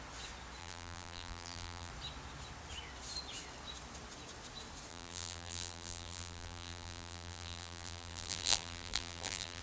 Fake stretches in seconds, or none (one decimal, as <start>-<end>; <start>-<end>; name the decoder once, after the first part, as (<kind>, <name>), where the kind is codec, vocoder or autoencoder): 0.6-1.9 (vocoder, BigVGAN v2); 4.9-9.6